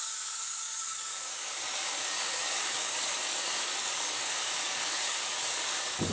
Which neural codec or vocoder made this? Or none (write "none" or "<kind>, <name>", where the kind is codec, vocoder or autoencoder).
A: codec, DAC